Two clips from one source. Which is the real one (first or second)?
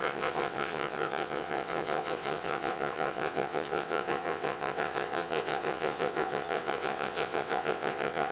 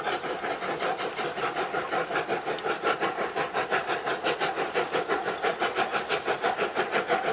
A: second